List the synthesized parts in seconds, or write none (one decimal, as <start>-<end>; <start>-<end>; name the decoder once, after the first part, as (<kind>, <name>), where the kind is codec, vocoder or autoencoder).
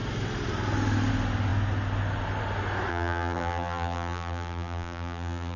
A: 2.9-5.6 (vocoder, BigVGAN v2)